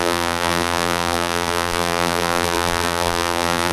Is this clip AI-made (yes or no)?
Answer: yes